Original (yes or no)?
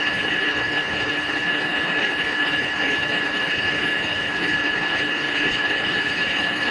no